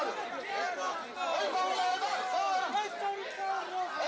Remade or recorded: recorded